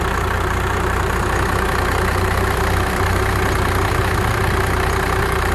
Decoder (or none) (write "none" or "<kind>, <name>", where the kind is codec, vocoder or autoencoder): vocoder, BigVGAN v2